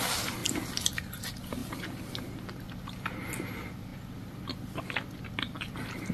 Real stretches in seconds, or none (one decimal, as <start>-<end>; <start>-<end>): 0.0-6.1